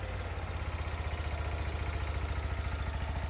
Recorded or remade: recorded